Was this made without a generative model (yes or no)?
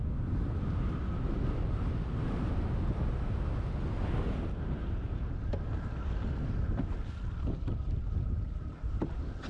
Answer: yes